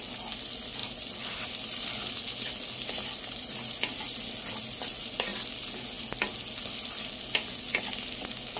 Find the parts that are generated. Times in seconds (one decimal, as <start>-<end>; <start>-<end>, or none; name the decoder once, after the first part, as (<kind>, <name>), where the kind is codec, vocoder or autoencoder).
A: none